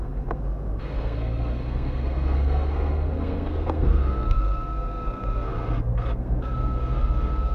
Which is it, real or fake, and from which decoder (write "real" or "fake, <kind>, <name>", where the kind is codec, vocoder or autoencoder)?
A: fake, codec, SNAC